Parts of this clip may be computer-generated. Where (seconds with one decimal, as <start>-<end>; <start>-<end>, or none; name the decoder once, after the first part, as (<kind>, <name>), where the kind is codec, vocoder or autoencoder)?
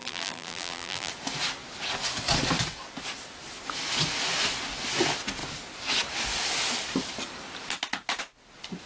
0.0-1.1 (vocoder, BigVGAN v2)